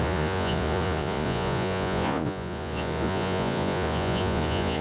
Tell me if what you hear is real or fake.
fake